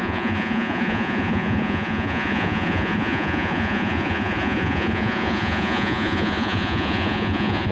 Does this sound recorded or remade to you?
remade